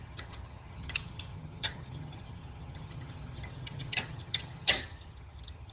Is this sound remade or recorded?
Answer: remade